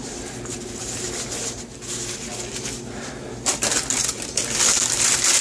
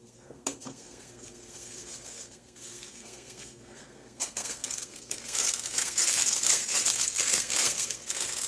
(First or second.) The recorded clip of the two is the first